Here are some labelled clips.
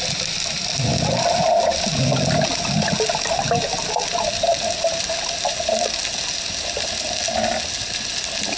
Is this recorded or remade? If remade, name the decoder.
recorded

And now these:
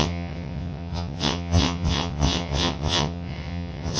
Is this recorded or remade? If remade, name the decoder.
remade, vocoder, WaveNeXt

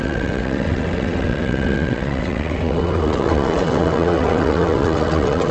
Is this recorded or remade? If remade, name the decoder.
remade, vocoder, WaveNeXt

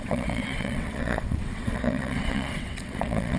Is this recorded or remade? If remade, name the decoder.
remade, vocoder, WaveNeXt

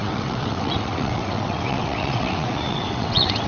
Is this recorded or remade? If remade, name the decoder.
remade, vocoder, WaveNeXt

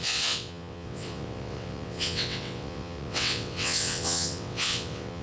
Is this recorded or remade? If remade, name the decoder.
remade, vocoder, WaveNeXt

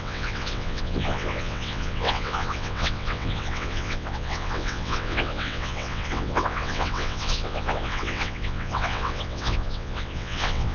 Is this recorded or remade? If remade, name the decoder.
remade, vocoder, WaveNeXt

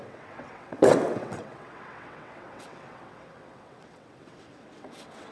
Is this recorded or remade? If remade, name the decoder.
remade, vocoder, WaveNeXt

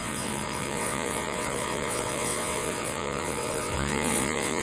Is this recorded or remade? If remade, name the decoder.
remade, vocoder, WaveNeXt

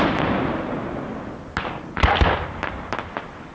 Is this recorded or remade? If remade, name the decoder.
recorded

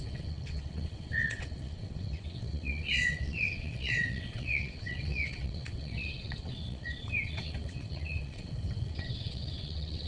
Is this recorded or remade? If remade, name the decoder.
remade, vocoder, WaveNeXt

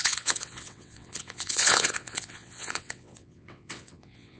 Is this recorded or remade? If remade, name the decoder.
remade, vocoder, WaveNeXt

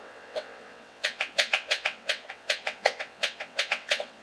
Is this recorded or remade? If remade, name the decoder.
remade, vocoder, WaveNeXt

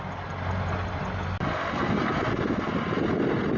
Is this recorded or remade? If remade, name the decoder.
recorded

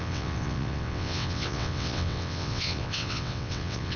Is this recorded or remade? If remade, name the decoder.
remade, vocoder, WaveNeXt